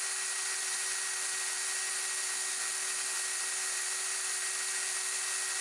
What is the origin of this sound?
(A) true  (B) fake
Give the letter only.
A